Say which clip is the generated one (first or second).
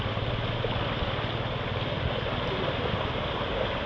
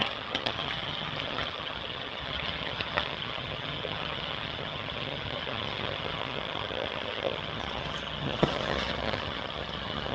second